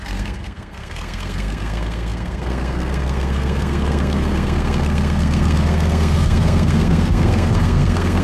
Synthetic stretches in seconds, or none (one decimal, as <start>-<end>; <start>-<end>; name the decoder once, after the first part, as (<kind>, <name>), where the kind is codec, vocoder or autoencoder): 0.0-8.2 (codec, SNAC)